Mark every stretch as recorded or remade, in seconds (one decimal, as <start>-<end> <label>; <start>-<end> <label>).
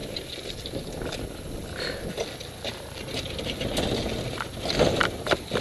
0.0-5.6 recorded